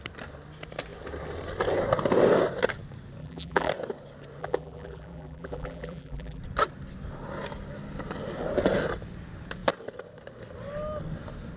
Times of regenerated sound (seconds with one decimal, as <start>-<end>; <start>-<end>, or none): 3.2-3.7; 4.4-6.4